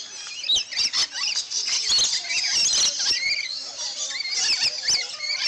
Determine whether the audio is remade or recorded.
recorded